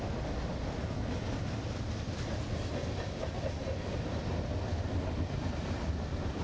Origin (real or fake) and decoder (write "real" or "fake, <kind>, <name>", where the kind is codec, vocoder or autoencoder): real